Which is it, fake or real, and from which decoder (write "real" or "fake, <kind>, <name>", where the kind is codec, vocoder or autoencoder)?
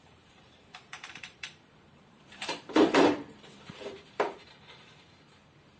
fake, vocoder, BigVGAN v2